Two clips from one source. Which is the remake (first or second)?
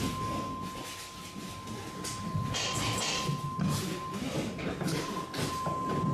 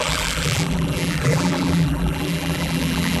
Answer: second